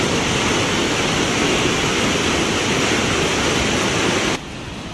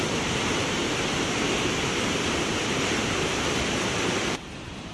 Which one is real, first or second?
first